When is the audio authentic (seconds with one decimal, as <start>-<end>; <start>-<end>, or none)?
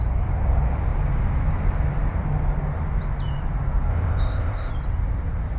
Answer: 0.0-3.9; 4.7-5.6